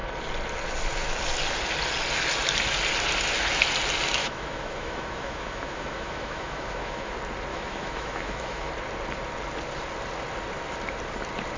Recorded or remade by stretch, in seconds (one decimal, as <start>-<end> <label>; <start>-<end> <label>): 0.0-4.2 recorded; 4.2-7.1 remade; 7.1-7.5 recorded; 7.5-8.7 remade; 8.7-11.6 recorded